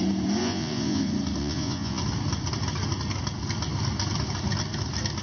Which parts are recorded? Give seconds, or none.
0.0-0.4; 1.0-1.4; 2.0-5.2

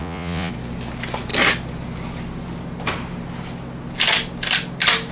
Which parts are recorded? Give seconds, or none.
0.5-5.1

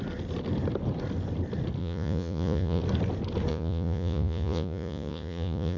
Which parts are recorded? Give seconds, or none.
0.0-1.8; 2.8-3.5